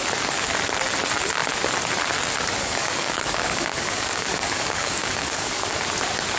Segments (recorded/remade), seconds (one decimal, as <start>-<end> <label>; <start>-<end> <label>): 0.0-2.6 recorded; 2.6-5.8 remade; 5.8-6.4 recorded